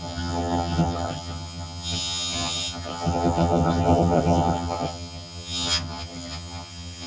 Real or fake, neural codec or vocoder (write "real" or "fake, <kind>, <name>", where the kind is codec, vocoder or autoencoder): fake, vocoder, HiFi-GAN